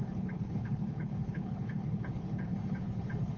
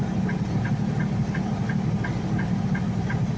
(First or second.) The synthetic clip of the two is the first